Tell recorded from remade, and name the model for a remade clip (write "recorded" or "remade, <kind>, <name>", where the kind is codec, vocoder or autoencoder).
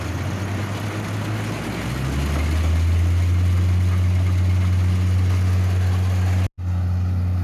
recorded